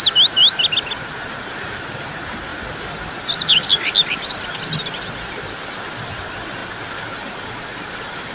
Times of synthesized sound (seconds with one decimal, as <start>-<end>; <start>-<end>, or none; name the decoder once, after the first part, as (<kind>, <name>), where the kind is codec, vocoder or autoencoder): none